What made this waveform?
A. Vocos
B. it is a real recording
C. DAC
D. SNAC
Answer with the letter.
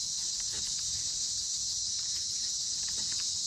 B